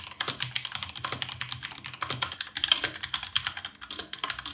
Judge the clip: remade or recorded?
recorded